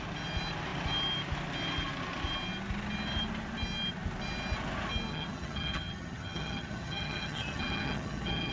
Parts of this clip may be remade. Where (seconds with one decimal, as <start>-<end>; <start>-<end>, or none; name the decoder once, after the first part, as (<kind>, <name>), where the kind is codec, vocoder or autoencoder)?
5.1-8.5 (vocoder, HiFi-GAN)